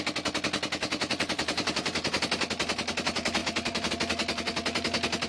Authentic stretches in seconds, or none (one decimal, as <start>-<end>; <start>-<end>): 0.0-0.8; 2.2-3.4; 3.9-5.3